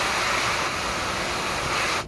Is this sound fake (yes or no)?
no